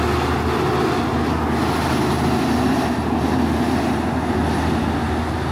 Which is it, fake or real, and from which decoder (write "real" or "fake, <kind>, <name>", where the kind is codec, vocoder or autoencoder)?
real